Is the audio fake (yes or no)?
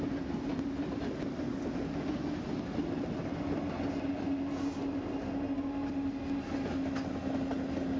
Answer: no